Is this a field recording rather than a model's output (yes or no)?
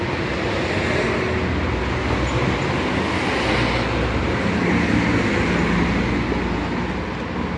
yes